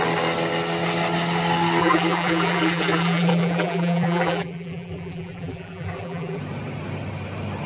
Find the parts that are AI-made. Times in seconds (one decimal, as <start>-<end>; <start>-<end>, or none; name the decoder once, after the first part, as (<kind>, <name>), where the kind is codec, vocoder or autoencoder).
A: 1.8-6.4 (vocoder, BigVGAN v2)